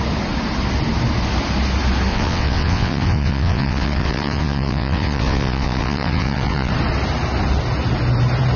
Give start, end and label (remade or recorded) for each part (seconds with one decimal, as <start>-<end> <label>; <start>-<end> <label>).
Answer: 0.0-2.1 recorded; 2.1-6.7 remade; 6.7-8.6 recorded